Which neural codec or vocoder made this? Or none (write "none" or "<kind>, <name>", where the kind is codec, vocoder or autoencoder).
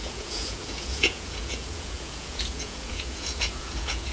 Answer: vocoder, Vocos